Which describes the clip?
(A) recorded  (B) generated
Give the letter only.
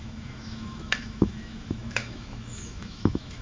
B